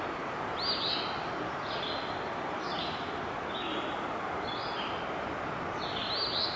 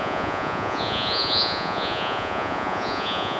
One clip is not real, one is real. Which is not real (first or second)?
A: second